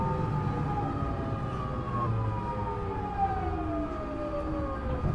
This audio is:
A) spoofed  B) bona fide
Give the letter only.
B